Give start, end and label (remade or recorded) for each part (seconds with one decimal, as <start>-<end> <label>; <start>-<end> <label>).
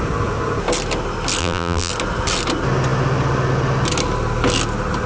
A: 0.0-1.4 recorded; 1.4-1.9 remade; 1.9-5.1 recorded